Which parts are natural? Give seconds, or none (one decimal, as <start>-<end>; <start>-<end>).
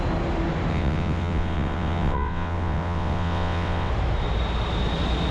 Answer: 0.0-0.7; 3.9-5.3